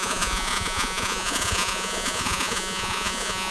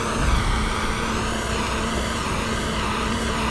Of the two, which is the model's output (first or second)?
first